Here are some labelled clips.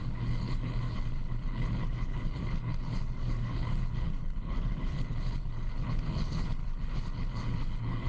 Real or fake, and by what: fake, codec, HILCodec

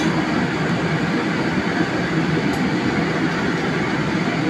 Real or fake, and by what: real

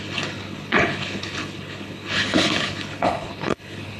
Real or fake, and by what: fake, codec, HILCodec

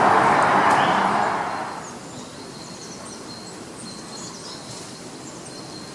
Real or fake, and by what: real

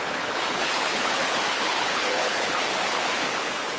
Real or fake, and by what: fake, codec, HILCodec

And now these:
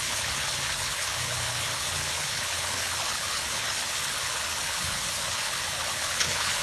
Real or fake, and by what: fake, codec, HILCodec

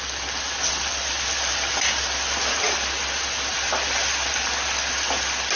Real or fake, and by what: real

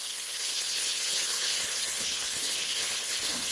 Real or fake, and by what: fake, codec, HILCodec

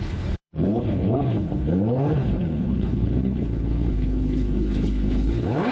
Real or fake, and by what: fake, codec, HILCodec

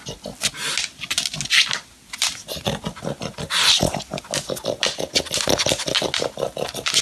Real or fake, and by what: real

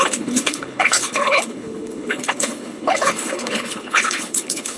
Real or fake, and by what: fake, codec, HILCodec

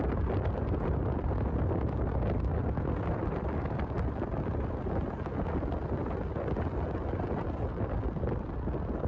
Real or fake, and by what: real